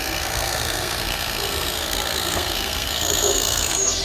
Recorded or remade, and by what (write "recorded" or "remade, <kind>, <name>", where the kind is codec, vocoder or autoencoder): remade, codec, SNAC